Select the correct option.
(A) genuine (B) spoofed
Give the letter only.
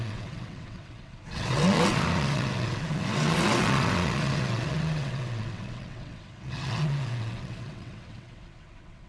B